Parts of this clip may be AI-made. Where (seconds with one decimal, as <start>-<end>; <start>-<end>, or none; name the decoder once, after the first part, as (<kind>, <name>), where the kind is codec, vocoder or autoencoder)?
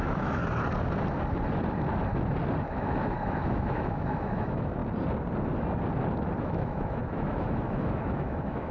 0.0-0.4 (autoencoder, DAC-VAE); 2.6-4.8; 6.4-8.7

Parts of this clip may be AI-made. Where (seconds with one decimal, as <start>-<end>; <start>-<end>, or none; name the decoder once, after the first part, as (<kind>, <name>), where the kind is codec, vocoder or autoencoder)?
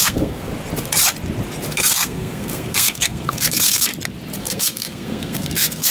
0.0-0.5 (codec, SNAC); 1.7-3.9; 4.4-5.9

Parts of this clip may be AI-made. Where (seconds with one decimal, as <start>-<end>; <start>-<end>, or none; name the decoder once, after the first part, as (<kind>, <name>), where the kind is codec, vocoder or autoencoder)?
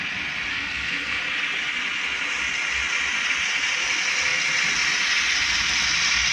0.5-1.2 (codec, SNAC)